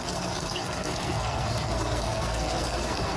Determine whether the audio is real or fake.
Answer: fake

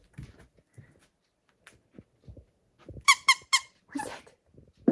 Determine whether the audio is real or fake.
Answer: real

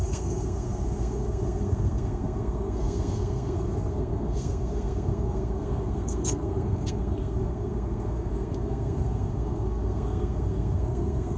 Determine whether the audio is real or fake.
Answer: fake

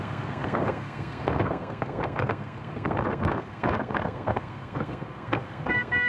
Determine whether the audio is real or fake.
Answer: fake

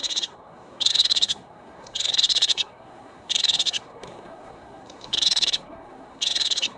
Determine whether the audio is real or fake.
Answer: fake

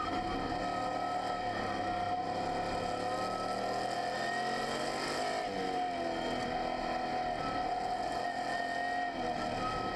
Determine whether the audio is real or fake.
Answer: real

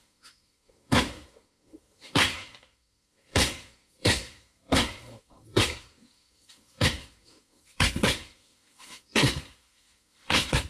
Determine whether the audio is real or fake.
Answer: fake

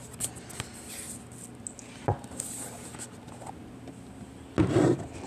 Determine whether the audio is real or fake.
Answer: real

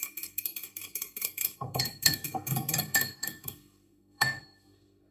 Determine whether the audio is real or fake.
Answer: fake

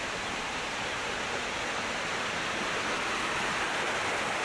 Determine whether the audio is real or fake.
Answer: real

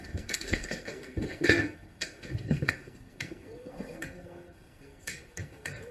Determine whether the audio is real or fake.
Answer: fake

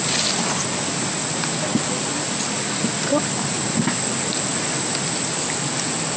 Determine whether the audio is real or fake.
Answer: real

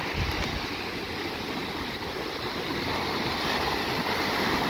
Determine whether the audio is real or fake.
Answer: real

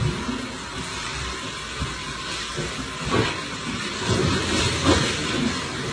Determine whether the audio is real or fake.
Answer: real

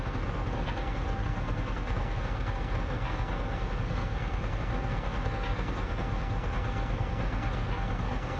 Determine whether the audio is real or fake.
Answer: fake